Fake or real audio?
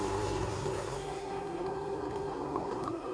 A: fake